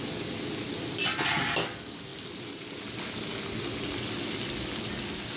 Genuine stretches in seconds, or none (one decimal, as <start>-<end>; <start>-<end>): 0.0-5.4